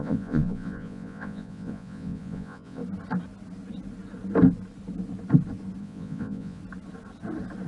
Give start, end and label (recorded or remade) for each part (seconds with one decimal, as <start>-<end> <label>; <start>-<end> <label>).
0.0-2.8 remade; 2.8-5.8 recorded; 5.8-6.6 remade; 6.6-7.7 recorded